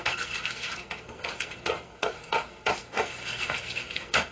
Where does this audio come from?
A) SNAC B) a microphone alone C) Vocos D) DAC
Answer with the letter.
A